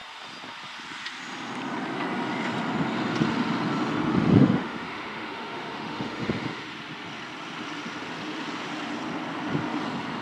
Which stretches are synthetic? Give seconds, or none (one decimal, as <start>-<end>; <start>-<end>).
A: 4.1-6.7